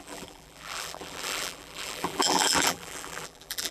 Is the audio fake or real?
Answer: fake